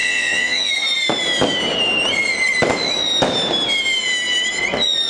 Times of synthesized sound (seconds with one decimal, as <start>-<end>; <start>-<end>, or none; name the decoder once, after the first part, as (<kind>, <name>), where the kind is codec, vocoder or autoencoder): 0.0-0.7 (vocoder, Vocos)